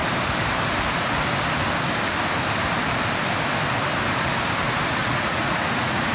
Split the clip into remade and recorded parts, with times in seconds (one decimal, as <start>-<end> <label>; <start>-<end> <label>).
0.0-5.0 recorded; 5.0-6.1 remade